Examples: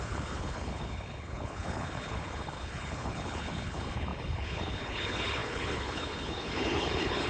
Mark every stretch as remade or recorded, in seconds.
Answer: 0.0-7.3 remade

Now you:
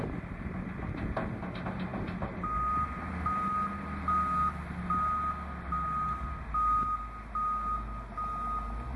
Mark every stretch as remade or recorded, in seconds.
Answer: 0.0-9.0 recorded

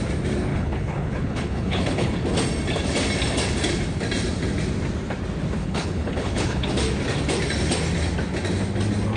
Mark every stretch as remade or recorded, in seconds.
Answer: 0.0-0.5 recorded; 0.5-2.1 remade; 2.1-5.6 recorded; 5.6-6.7 remade; 6.7-9.2 recorded